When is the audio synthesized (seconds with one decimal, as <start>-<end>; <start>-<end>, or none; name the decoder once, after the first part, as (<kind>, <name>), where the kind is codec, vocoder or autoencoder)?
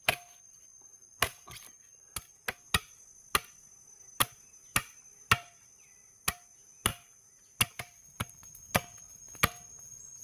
none